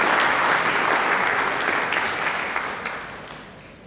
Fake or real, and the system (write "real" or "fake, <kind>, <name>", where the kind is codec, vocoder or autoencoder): real